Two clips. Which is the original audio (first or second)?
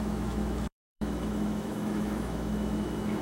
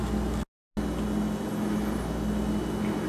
second